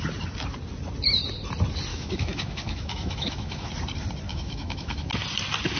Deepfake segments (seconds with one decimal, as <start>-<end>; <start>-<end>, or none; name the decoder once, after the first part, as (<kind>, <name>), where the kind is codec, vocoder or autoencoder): 1.9-3.7 (autoencoder, DAC-VAE); 4.3-5.1